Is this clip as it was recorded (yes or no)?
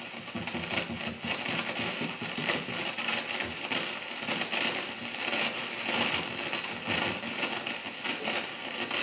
yes